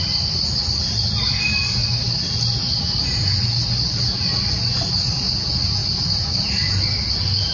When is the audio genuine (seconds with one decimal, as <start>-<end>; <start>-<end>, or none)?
0.0-7.5